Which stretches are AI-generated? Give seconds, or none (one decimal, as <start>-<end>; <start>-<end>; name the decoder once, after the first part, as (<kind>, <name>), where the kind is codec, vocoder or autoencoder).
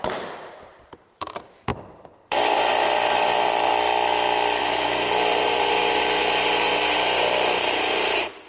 0.0-3.7 (vocoder, BigVGAN v2); 4.6-8.5